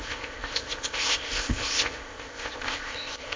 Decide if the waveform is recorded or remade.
remade